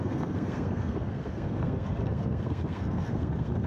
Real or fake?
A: fake